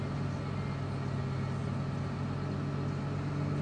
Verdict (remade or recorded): recorded